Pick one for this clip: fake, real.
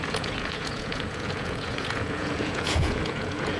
fake